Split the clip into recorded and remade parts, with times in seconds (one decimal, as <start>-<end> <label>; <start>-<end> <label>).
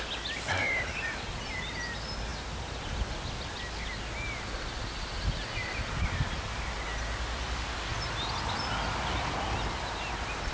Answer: 0.0-10.5 recorded